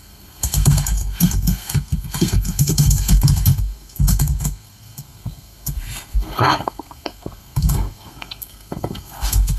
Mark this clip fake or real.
fake